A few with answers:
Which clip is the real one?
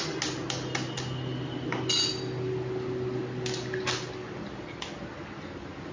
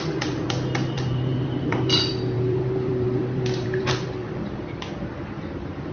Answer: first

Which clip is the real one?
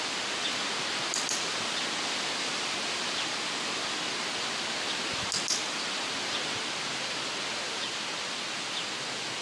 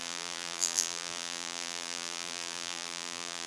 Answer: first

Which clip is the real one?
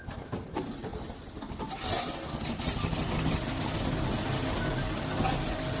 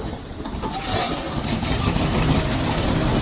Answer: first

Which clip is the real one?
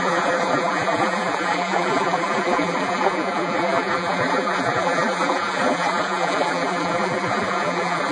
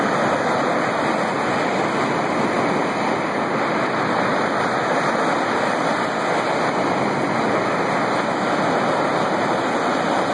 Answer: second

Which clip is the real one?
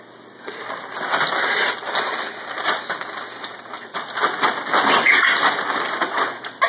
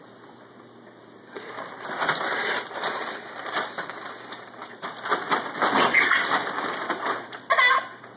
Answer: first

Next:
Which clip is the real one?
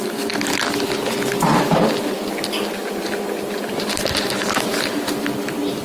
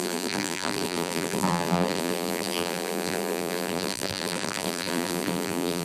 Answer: first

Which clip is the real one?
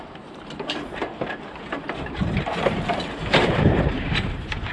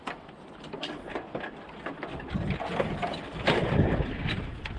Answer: second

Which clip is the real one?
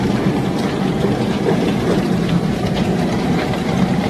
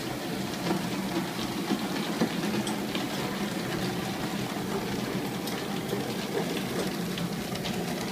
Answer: second